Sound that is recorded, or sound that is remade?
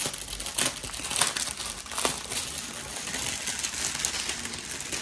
recorded